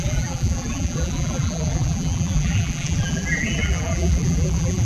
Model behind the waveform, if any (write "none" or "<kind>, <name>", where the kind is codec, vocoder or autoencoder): vocoder, BigVGAN v2